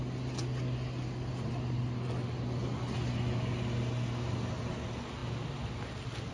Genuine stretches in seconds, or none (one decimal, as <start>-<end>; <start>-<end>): 0.0-6.3